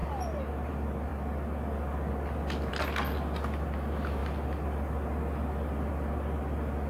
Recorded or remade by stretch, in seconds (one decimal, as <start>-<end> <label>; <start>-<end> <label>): 0.0-6.9 recorded